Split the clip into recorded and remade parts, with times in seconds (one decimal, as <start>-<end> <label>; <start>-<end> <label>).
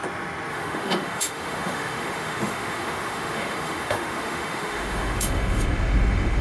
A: 0.0-0.5 recorded; 0.5-6.4 remade